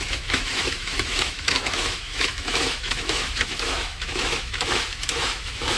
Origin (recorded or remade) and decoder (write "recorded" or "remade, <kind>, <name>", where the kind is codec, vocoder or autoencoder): remade, autoencoder, DAC-VAE